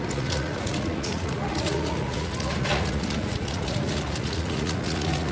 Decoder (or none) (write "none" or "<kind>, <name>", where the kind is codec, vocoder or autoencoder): vocoder, Vocos